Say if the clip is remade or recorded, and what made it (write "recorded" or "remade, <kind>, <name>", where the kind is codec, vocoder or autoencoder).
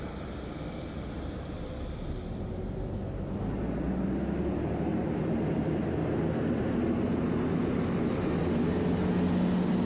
recorded